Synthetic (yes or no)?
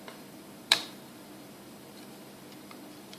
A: yes